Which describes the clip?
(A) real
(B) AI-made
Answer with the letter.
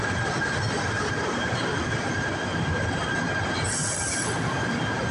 A